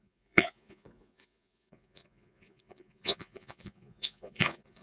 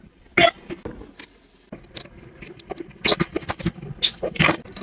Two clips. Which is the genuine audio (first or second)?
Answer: second